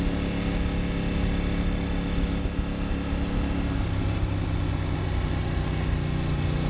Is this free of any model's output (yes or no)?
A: yes